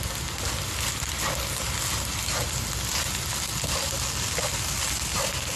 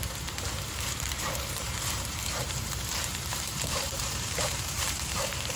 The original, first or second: first